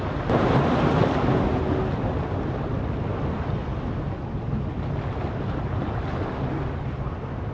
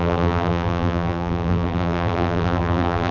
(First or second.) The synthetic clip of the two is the second